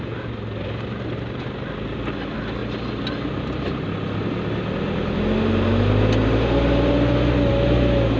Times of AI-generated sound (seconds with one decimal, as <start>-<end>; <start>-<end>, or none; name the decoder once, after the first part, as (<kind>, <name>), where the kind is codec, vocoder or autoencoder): none